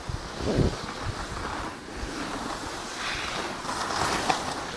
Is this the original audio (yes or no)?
yes